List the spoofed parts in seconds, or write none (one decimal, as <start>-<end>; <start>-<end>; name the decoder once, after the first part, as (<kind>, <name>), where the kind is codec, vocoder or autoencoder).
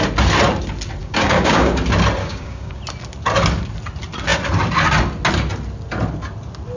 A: 1.0-1.7 (codec, DAC); 2.2-2.8